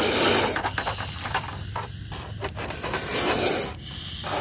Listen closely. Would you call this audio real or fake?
real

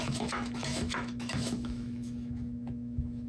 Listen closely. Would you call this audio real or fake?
fake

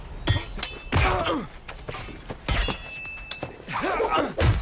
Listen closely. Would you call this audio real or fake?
real